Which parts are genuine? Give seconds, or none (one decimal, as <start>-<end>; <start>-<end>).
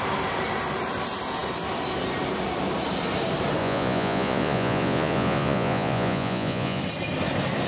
0.0-3.6; 6.8-7.7